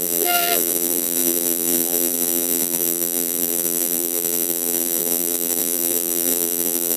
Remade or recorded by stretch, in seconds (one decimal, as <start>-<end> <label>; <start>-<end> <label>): 0.0-7.0 remade